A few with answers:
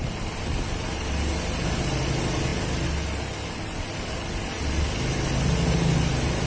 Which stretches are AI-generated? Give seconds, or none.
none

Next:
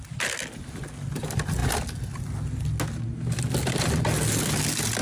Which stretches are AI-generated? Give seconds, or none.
none

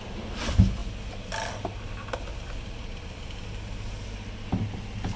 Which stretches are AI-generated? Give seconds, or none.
none

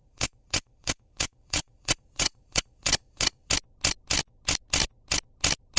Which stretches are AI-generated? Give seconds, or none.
0.0-3.5 (vocoder, WaveNeXt)